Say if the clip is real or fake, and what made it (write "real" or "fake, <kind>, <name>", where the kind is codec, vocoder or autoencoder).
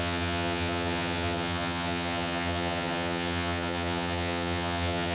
fake, vocoder, HiFi-GAN